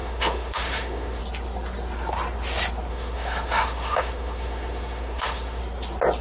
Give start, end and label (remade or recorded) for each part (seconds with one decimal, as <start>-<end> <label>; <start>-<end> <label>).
0.0-1.2 remade; 1.2-2.9 recorded; 2.9-5.6 remade; 5.6-6.2 recorded